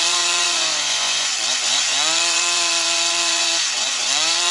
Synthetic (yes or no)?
yes